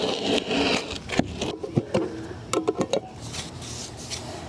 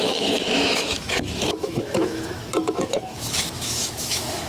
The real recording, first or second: first